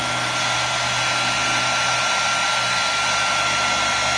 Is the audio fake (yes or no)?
no